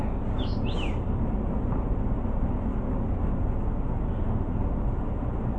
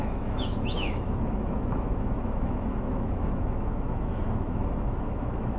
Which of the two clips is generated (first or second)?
second